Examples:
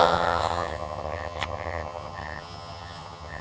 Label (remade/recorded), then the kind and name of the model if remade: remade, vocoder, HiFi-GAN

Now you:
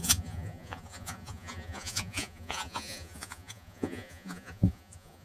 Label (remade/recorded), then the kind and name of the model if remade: remade, vocoder, Vocos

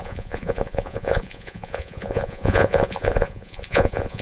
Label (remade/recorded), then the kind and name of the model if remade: remade, vocoder, Vocos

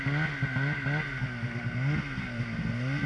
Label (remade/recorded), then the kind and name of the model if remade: recorded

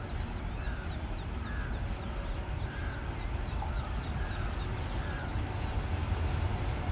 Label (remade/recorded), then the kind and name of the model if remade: recorded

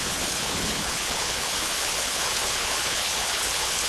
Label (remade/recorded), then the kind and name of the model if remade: remade, codec, HILCodec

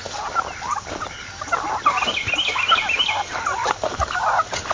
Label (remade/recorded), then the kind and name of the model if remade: recorded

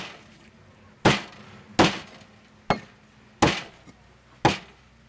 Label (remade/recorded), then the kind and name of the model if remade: recorded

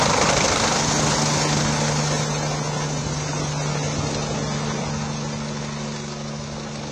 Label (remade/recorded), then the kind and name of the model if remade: recorded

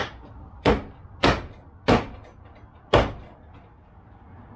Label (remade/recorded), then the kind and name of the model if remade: recorded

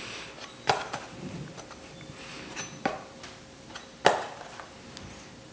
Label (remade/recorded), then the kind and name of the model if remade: recorded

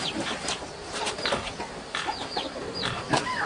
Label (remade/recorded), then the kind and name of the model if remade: remade, vocoder, BigVGAN v2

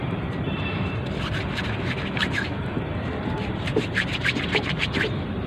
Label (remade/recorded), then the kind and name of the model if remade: remade, vocoder, BigVGAN v2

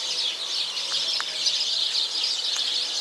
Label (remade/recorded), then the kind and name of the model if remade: recorded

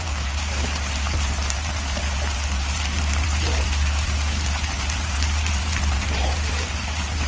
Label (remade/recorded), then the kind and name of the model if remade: remade, vocoder, BigVGAN v2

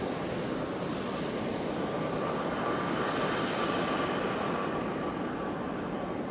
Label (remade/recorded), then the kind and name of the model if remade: recorded